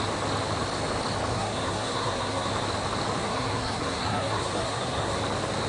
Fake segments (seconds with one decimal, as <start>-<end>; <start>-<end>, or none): 1.3-2.5; 3.2-5.2